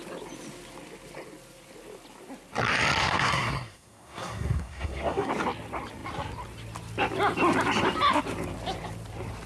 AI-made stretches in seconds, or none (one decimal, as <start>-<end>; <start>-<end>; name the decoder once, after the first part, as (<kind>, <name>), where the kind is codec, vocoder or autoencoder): 3.0-5.3 (codec, SNAC)